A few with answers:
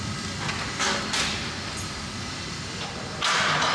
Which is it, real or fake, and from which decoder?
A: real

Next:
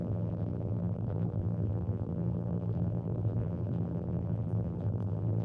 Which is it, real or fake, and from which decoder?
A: fake, vocoder, BigVGAN v2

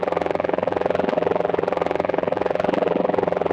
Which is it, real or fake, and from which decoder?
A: fake, vocoder, BigVGAN v2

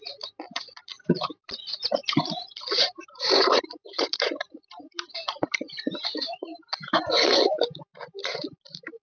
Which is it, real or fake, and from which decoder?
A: fake, vocoder, BigVGAN v2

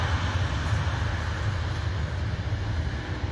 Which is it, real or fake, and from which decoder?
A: real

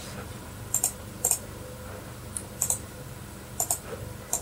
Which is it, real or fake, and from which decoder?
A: fake, vocoder, BigVGAN v2